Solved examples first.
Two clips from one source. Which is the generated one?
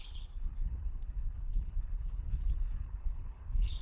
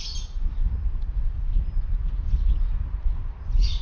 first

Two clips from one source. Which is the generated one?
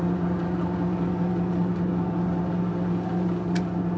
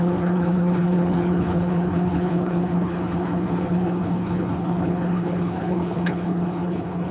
second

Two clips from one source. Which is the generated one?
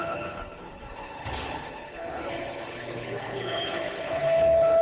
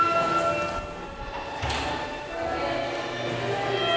first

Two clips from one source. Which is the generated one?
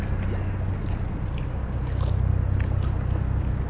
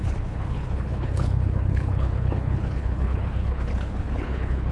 second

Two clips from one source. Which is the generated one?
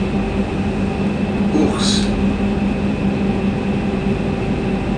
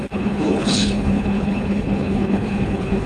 second